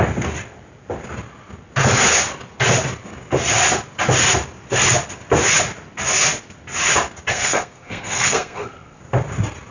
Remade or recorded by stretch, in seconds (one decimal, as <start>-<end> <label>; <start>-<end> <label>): 0.0-7.3 recorded; 7.3-9.0 remade; 9.0-9.7 recorded